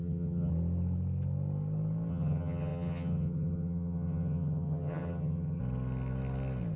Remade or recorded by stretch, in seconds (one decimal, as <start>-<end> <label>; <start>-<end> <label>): 0.0-0.5 remade; 0.5-2.1 recorded; 2.1-5.6 remade; 5.6-6.8 recorded